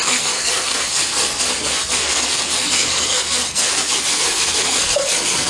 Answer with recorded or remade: remade